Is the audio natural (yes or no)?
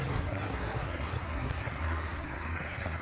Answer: no